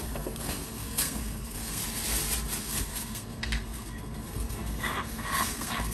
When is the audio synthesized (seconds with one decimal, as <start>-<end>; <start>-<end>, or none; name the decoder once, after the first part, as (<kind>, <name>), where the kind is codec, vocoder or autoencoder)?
0.0-1.8 (codec, SNAC); 2.6-5.9